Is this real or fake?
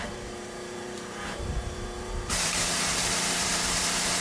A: fake